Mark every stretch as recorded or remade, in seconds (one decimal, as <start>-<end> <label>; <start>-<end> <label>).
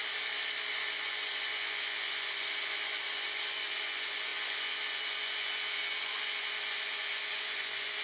0.0-0.7 recorded; 0.7-8.0 remade